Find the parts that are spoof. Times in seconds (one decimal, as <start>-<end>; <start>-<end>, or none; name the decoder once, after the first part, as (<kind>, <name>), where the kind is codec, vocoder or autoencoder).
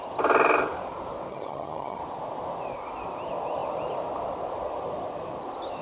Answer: 1.3-2.0 (vocoder, HiFi-GAN)